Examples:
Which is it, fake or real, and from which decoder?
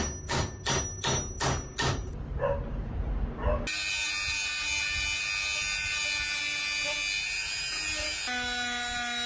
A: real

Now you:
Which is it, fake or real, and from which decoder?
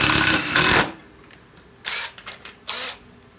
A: real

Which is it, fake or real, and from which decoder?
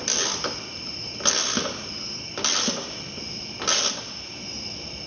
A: real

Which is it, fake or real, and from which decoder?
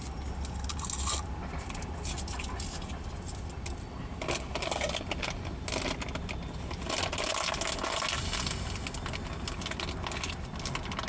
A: real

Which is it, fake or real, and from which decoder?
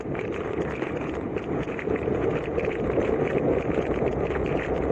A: fake, vocoder, Vocos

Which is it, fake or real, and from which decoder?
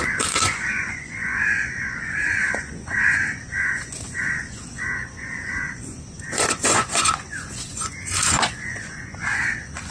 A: fake, vocoder, Vocos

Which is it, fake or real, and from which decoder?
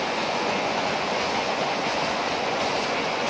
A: fake, vocoder, Vocos